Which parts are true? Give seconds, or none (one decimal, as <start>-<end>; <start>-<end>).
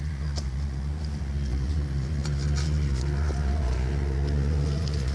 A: none